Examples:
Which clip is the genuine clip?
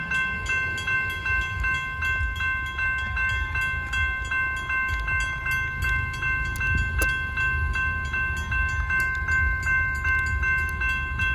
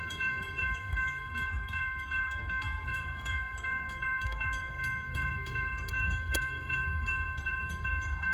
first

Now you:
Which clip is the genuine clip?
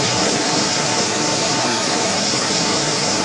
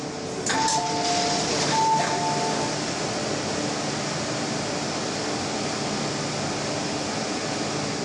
second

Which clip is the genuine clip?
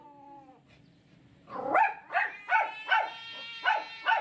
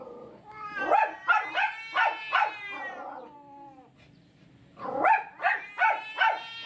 second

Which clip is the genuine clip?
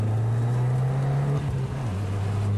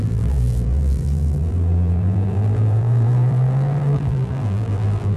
first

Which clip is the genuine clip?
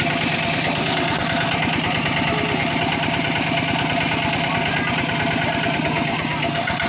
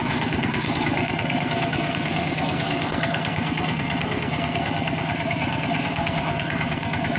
first